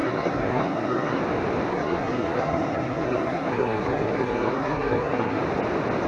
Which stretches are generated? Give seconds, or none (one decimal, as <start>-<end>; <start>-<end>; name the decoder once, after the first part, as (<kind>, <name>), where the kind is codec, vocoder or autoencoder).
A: 0.0-1.2 (codec, SNAC); 1.7-5.4